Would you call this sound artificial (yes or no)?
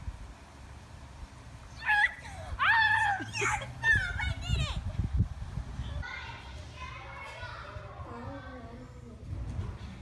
no